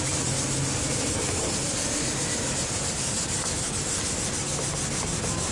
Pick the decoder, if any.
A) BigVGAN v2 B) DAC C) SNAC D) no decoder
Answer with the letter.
D